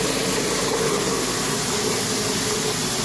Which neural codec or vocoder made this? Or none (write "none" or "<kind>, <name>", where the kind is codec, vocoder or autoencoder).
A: none